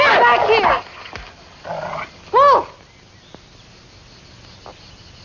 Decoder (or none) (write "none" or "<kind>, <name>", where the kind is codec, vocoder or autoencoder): none